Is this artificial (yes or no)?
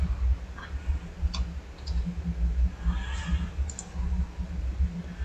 no